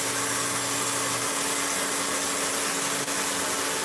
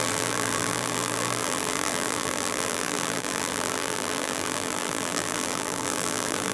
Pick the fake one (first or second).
second